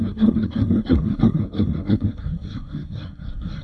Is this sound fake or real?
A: fake